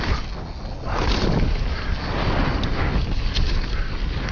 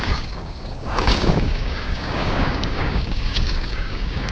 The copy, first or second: second